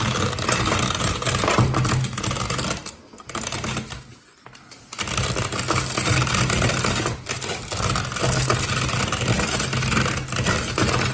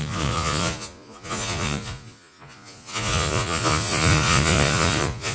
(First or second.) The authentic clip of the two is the first